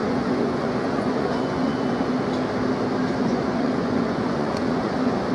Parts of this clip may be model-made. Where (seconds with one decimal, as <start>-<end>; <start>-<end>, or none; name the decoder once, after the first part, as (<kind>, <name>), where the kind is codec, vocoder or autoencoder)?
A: 0.0-2.1 (vocoder, Vocos); 3.2-5.3